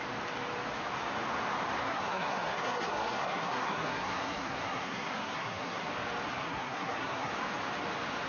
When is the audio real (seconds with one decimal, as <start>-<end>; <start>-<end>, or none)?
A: 0.0-1.8; 5.9-6.4; 7.3-8.3